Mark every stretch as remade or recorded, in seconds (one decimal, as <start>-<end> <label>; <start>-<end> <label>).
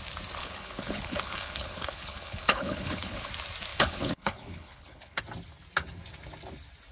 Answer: 0.0-0.4 recorded; 0.4-3.3 remade; 3.3-3.7 recorded; 3.7-5.2 remade; 5.2-6.9 recorded